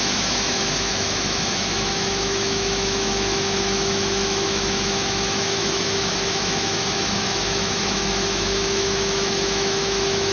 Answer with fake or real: fake